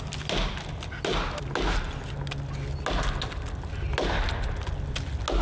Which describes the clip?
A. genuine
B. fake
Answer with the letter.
A